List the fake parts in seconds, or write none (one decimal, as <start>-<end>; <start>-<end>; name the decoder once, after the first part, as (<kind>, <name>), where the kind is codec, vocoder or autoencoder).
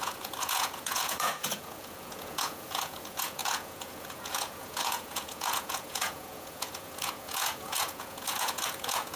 0.0-9.2 (vocoder, Vocos)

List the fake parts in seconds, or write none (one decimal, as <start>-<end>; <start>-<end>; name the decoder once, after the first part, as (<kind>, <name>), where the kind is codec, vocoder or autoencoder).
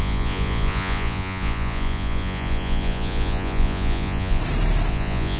0.0-4.4 (vocoder, Vocos); 4.9-5.4